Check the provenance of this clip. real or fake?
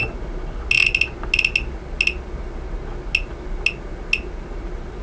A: real